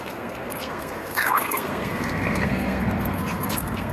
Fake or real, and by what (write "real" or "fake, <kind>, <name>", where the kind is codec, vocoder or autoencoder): fake, codec, SNAC